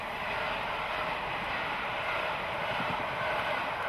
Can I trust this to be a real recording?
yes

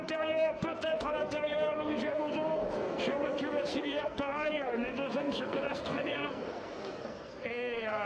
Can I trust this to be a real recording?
no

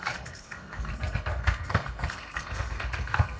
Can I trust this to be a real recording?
no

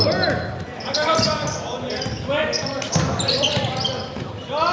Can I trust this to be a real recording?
yes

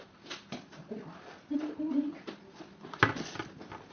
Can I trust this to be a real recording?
yes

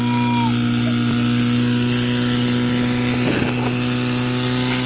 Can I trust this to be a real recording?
yes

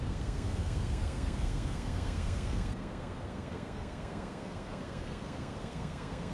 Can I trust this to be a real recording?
no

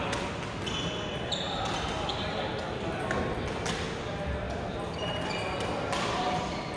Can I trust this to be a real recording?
yes